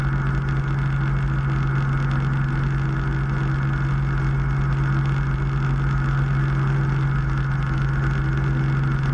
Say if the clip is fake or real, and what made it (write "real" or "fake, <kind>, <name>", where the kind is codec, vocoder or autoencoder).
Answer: real